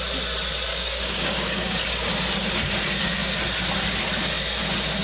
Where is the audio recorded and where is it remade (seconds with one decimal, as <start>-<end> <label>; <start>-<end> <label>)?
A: 0.0-0.7 recorded; 0.7-2.1 remade; 2.1-5.0 recorded